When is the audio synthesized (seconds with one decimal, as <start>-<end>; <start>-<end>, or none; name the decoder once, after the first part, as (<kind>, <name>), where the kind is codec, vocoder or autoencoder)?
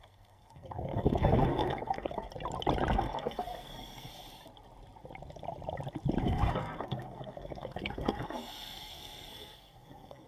0.0-2.3 (codec, SNAC); 2.9-4.1; 6.2-10.3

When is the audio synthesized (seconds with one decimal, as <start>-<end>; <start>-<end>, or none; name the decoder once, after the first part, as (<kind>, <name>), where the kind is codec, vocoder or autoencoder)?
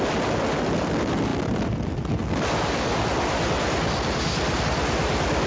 none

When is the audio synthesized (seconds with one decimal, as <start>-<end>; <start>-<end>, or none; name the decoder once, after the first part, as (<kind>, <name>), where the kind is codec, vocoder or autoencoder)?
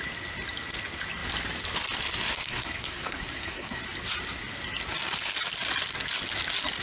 2.3-3.8 (codec, SNAC)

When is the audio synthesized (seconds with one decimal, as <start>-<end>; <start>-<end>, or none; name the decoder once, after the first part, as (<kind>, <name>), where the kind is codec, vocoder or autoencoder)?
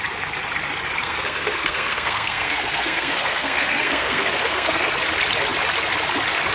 1.0-4.9 (codec, SNAC)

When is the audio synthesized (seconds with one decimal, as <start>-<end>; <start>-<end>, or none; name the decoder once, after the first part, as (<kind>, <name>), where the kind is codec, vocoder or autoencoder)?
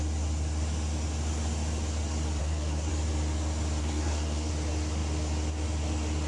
2.4-2.9 (codec, SNAC); 3.8-4.5